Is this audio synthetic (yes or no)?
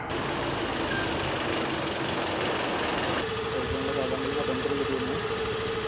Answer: no